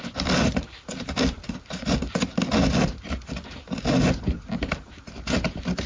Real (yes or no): yes